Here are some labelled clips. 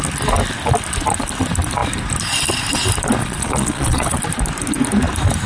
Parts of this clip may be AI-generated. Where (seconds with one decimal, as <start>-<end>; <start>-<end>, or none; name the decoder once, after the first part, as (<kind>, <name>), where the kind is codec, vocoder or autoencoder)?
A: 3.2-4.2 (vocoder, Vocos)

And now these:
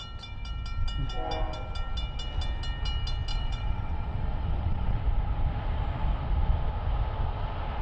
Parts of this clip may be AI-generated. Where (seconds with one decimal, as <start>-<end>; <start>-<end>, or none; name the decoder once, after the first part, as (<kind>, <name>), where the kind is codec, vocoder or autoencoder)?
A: 3.3-5.0 (vocoder, WaveNeXt)

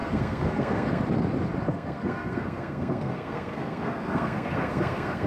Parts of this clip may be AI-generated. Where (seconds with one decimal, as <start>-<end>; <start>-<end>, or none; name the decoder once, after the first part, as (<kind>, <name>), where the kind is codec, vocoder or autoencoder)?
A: 0.0-1.0 (codec, SNAC); 1.7-5.3

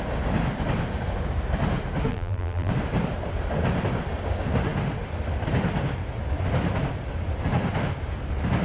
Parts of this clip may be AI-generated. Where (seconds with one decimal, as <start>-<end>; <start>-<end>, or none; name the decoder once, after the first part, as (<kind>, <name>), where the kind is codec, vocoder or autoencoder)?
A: 2.1-2.7 (vocoder, BigVGAN v2)

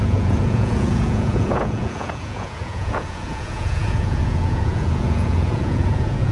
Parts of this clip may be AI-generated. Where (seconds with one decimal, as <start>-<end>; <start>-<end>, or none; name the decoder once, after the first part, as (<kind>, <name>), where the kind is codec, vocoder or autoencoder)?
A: 0.0-6.3 (vocoder, Vocos)